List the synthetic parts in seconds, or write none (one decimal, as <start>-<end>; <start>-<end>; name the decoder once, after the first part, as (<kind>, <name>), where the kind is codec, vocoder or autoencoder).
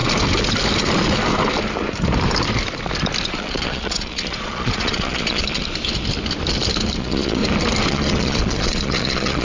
3.3-5.6 (vocoder, Vocos); 7.0-7.4; 7.9-9.4